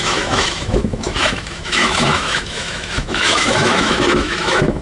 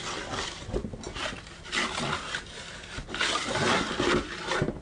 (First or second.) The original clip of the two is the second